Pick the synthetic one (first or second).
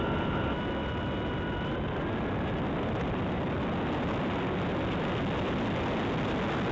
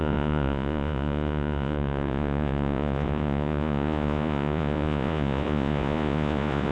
second